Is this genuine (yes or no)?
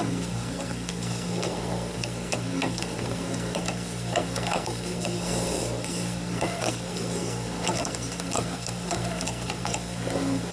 no